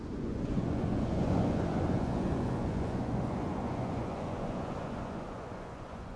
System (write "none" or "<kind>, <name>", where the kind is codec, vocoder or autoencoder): vocoder, Vocos